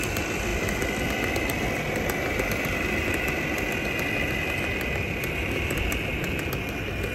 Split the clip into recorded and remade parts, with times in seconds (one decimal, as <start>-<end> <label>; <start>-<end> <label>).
0.0-7.1 recorded